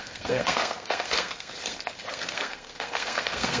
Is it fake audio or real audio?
fake